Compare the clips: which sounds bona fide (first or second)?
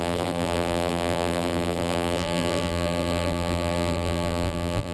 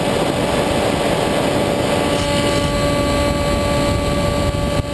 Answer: second